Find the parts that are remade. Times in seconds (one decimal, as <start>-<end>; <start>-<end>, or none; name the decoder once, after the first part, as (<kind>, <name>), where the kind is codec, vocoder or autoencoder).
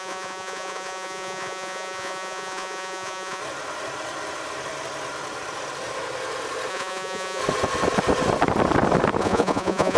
0.0-3.4 (vocoder, Vocos); 6.7-7.4; 9.2-10.0